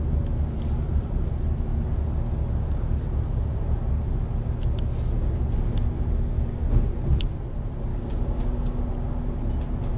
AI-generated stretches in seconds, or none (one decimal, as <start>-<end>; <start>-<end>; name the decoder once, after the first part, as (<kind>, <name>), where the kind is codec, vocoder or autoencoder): 7.9-8.8 (codec, DAC)

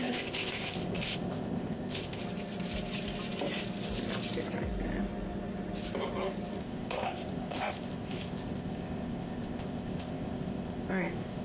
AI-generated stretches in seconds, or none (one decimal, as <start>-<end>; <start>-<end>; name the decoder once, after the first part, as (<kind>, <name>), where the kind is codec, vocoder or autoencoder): 0.0-2.2 (codec, ZipCodec); 6.6-11.4

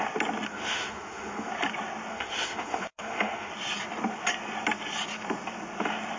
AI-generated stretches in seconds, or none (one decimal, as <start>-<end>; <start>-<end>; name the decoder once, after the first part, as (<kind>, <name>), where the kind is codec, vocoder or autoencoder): 0.5-1.5 (autoencoder, DAC-VAE); 2.1-3.5

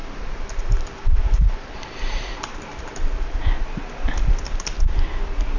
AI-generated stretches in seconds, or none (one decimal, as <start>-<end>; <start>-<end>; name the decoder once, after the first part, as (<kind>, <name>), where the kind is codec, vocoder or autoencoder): 0.0-3.4 (vocoder, BigVGAN v2)